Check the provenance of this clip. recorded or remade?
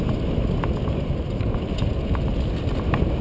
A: recorded